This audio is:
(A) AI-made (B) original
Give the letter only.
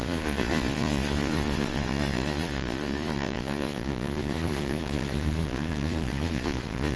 A